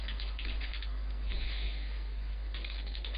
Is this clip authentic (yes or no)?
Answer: no